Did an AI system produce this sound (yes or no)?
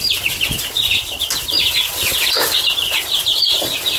no